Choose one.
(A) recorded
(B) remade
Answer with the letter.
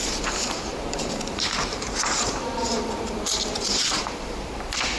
B